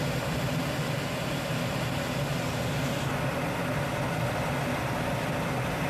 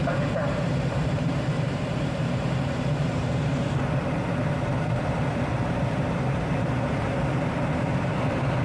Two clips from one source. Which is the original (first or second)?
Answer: first